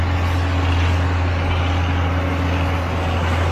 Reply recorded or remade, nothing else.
recorded